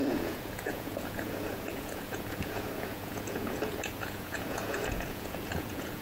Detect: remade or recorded remade